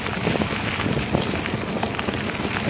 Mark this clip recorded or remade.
recorded